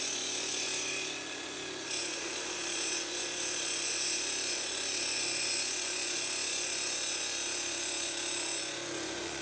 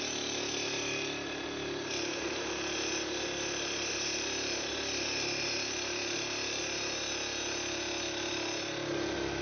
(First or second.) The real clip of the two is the second